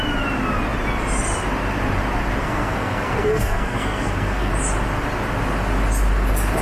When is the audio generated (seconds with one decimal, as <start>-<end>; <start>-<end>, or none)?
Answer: 2.4-4.5